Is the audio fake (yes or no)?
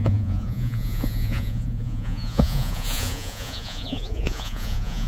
yes